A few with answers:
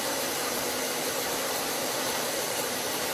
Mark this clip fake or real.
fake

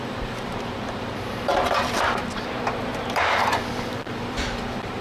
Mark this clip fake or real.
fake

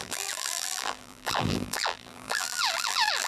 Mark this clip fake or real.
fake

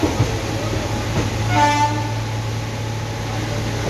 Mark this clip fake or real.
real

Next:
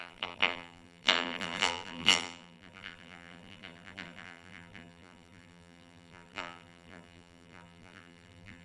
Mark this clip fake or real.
fake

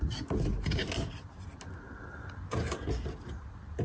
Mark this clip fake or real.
real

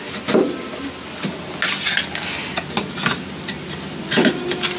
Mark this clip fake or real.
real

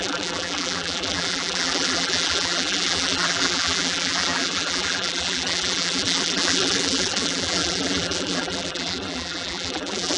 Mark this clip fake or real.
fake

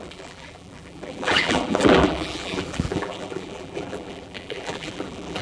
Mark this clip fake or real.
fake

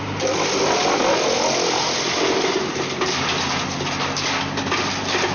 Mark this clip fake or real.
real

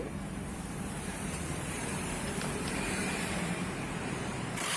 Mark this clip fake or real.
fake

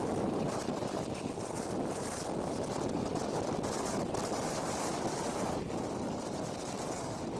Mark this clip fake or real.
real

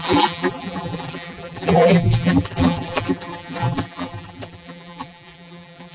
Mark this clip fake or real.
fake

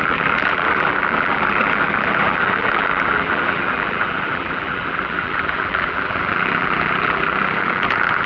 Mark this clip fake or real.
fake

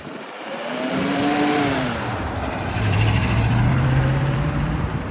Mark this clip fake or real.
fake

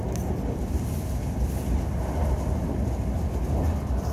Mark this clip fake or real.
fake